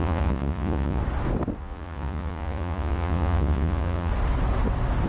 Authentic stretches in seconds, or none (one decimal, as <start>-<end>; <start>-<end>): 1.0-1.6; 4.1-5.1